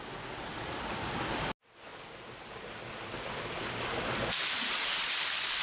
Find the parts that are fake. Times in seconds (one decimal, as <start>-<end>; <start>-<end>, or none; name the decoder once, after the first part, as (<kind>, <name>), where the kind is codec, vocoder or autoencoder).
none